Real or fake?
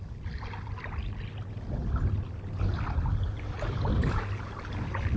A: real